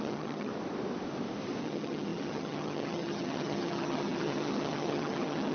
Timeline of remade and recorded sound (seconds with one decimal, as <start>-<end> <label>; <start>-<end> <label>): 0.0-0.5 remade; 0.5-1.6 recorded; 1.6-5.5 remade